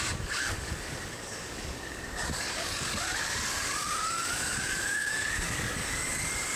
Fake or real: fake